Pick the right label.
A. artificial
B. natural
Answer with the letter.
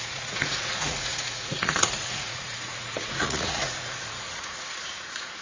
A